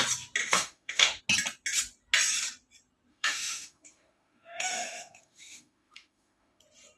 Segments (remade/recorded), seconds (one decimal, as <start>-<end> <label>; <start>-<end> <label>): 0.0-0.4 recorded; 0.4-1.2 remade; 1.2-3.1 recorded; 3.1-6.6 remade; 6.6-7.0 recorded